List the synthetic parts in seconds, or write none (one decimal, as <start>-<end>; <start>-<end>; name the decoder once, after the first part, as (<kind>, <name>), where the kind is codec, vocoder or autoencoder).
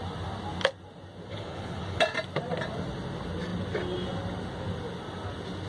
1.3-2.0 (codec, HILCodec)